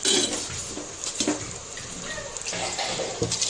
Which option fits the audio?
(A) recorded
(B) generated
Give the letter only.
A